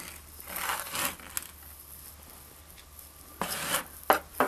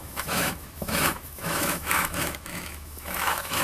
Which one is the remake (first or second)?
second